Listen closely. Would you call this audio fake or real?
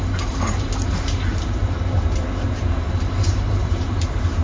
fake